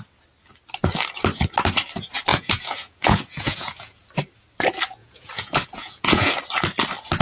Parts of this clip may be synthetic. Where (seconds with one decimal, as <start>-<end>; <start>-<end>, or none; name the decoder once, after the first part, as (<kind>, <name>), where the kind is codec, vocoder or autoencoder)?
2.3-4.0 (vocoder, Vocos); 5.0-6.3